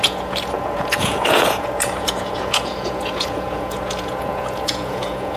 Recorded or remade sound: remade